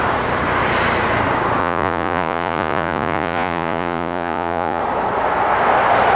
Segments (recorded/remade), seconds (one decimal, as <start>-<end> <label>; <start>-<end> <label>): 0.0-1.6 recorded; 1.6-4.8 remade; 4.8-6.2 recorded